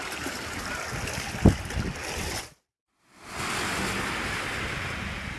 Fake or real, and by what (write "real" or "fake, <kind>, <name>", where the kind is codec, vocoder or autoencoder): real